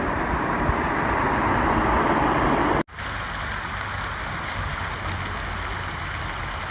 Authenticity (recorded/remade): recorded